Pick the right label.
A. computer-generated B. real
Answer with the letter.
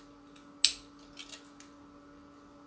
B